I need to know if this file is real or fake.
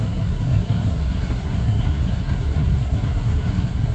fake